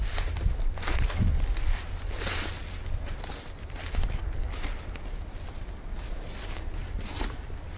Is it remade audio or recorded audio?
recorded